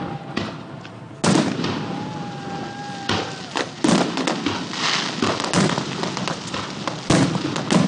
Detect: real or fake real